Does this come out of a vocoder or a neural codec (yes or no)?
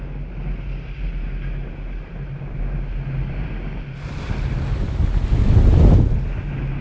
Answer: no